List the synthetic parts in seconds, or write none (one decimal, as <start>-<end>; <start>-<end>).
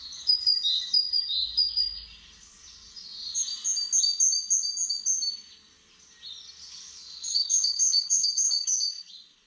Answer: 7.0-9.5